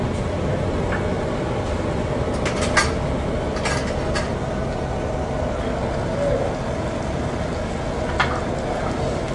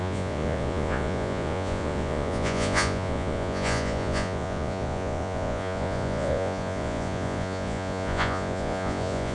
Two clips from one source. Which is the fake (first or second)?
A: second